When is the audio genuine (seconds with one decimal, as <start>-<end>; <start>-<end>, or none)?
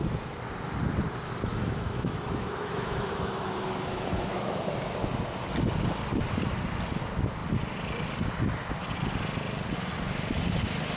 0.0-1.5; 4.7-11.0